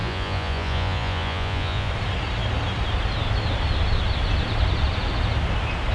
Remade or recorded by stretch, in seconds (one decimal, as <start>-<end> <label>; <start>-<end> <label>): 0.0-1.9 remade; 1.9-5.9 recorded